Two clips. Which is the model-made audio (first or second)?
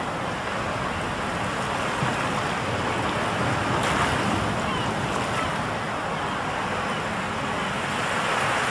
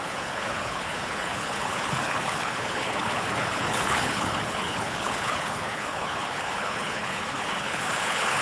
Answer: second